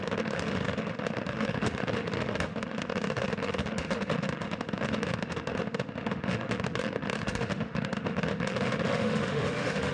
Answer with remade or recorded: remade